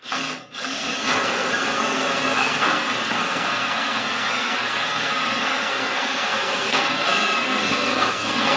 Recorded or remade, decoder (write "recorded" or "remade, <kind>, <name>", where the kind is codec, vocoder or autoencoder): remade, codec, SNAC